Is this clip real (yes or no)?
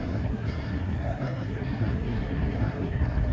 no